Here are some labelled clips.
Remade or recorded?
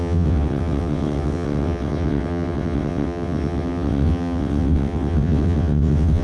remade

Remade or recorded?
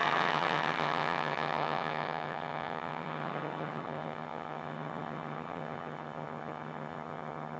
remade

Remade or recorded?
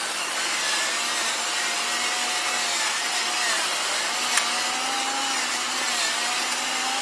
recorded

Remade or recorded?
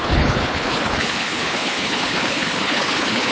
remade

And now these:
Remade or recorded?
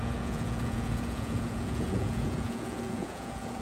remade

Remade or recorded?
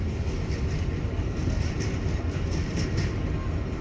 recorded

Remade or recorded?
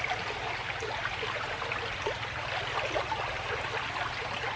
recorded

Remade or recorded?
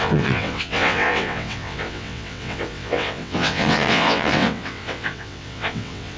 remade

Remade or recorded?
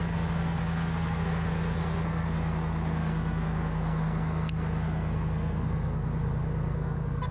remade